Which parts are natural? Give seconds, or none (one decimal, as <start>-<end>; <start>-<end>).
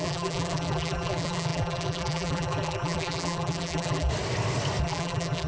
4.1-4.8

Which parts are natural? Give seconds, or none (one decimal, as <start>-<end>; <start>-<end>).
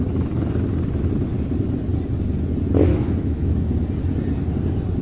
0.0-2.9; 3.6-5.0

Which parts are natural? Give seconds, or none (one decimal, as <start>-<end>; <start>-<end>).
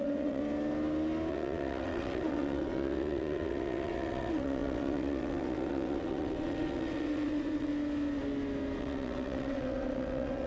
0.4-1.3; 7.7-8.8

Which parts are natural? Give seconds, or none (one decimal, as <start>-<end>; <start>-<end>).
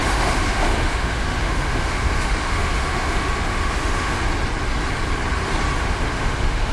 4.2-5.8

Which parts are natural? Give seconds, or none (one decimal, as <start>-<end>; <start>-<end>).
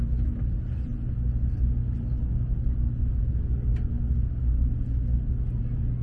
0.0-6.0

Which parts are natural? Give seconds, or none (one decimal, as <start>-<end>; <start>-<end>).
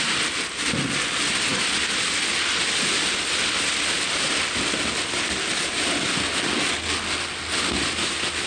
0.0-8.5